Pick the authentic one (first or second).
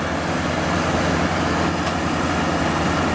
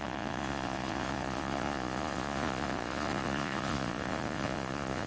first